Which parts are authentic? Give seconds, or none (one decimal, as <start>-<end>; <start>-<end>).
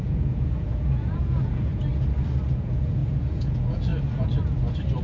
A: 1.7-2.5; 3.9-5.0